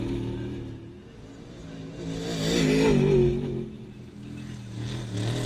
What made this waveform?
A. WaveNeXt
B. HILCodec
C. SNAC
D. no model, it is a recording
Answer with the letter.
D